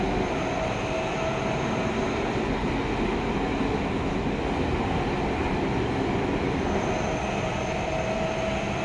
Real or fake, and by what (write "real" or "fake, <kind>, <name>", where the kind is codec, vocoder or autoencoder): real